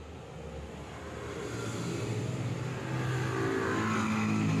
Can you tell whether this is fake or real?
real